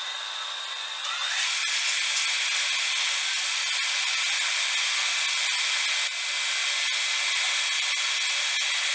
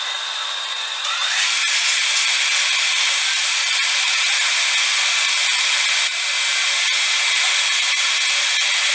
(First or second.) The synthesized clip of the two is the second